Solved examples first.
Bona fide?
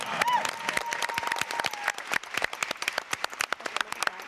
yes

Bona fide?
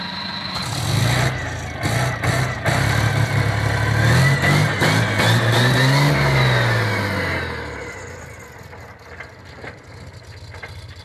yes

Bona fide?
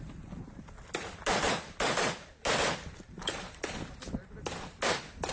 yes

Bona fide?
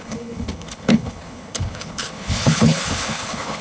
no